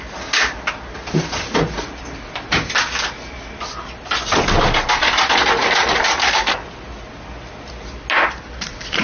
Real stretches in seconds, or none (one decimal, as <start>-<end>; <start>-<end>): 0.0-5.6; 6.5-9.0